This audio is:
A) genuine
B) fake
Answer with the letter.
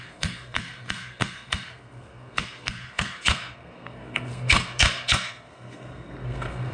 B